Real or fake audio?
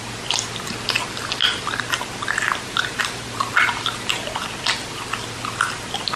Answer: real